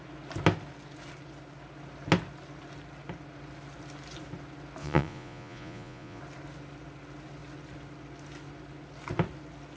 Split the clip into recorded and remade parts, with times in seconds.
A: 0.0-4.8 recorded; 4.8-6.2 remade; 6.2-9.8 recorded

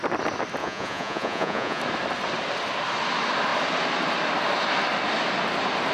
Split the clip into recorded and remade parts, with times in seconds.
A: 0.0-0.6 recorded; 0.6-1.8 remade; 1.8-5.9 recorded

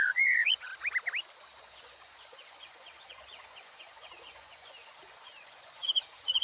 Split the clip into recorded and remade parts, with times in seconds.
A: 0.0-0.7 remade; 0.7-1.6 recorded; 1.6-6.4 remade

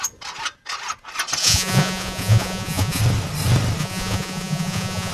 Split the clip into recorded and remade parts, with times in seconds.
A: 0.0-1.4 recorded; 1.4-3.0 remade; 3.0-3.8 recorded; 3.8-5.1 remade

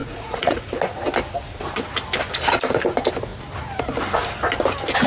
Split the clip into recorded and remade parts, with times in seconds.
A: 0.0-1.0 remade; 1.0-5.1 recorded

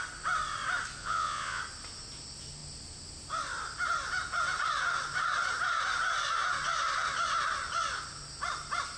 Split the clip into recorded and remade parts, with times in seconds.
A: 0.0-1.0 recorded; 1.0-1.6 remade; 1.6-9.0 recorded

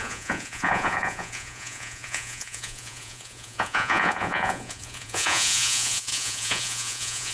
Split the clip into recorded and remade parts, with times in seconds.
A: 0.0-7.3 remade